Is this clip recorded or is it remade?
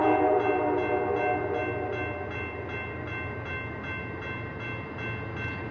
recorded